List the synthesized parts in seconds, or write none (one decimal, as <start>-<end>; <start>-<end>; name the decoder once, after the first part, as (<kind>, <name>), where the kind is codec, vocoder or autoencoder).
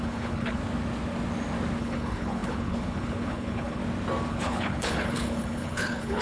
0.0-0.6 (codec, HILCodec); 1.8-3.8; 4.3-6.2